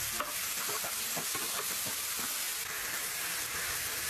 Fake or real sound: real